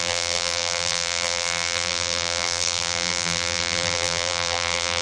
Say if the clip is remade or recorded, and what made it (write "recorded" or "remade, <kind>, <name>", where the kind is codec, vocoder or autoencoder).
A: remade, vocoder, BigVGAN v2